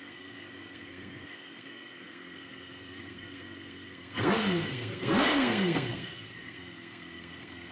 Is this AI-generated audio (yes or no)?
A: yes